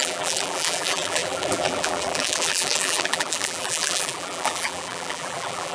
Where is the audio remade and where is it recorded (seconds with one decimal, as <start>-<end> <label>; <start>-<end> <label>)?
0.0-5.7 remade